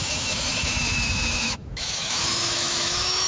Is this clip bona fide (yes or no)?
no